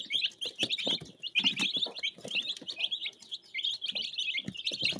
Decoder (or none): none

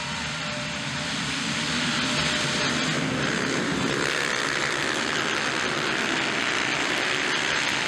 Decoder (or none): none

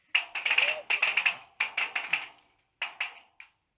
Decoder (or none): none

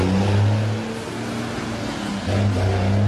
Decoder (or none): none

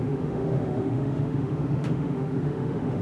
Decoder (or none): autoencoder, DAC-VAE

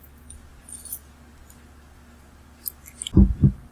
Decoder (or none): none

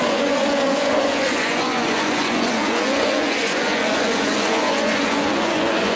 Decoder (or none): vocoder, Vocos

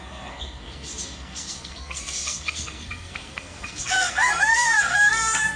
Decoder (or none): codec, SNAC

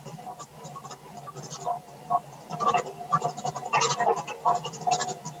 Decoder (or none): none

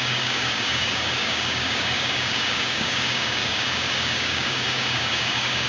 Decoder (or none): codec, DAC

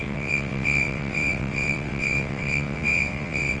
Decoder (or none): vocoder, WaveNeXt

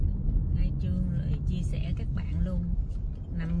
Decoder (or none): none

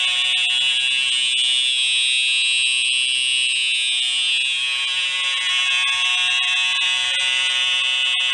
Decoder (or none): none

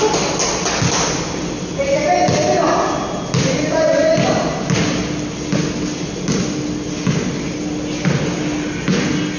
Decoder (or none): none